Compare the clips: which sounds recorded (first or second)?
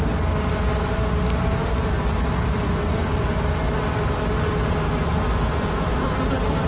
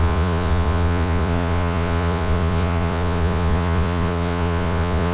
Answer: first